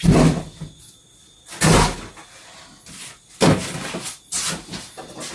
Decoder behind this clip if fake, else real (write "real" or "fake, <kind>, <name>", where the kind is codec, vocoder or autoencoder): real